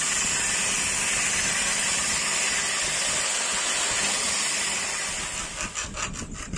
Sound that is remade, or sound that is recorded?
recorded